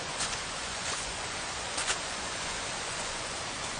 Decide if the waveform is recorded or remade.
remade